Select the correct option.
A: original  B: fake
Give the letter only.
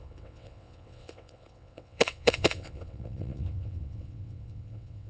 B